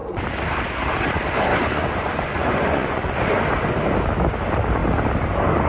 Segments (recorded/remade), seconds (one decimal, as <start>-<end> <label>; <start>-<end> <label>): 0.0-1.5 recorded; 1.5-3.2 remade; 3.2-5.7 recorded